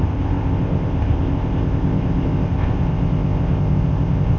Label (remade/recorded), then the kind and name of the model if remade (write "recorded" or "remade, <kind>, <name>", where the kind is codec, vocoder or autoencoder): remade, codec, ZipCodec